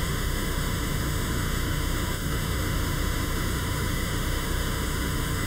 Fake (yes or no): yes